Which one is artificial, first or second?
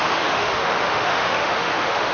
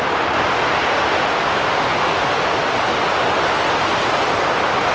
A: first